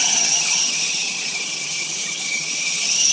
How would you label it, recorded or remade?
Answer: remade